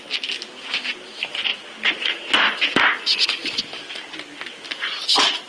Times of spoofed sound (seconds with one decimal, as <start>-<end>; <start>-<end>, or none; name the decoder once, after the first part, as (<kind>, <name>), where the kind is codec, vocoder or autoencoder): none